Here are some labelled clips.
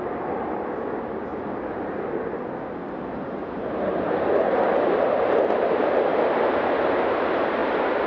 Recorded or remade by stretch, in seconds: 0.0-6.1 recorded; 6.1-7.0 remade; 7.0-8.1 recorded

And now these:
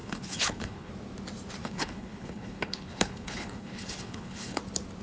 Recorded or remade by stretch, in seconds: 0.0-0.9 remade; 0.9-1.6 recorded; 1.6-4.6 remade; 4.6-5.0 recorded

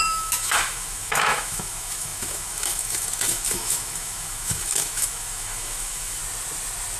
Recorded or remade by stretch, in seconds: 0.0-6.2 remade; 6.2-7.0 recorded

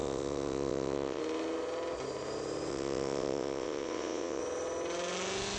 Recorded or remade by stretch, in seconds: 0.0-1.2 remade; 1.2-2.7 recorded; 2.7-4.4 remade; 4.4-5.6 recorded

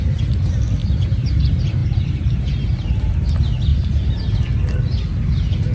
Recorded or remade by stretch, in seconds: 0.0-5.7 recorded

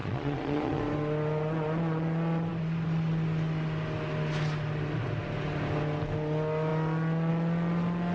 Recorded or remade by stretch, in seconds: 0.0-0.8 remade; 0.8-8.1 recorded

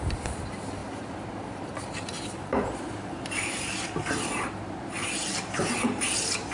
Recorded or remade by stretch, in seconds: 0.0-6.5 remade

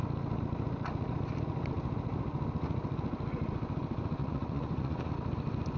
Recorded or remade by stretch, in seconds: 0.0-4.2 recorded; 4.2-5.1 remade; 5.1-5.8 recorded